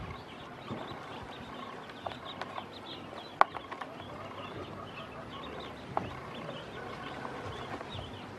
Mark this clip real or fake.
real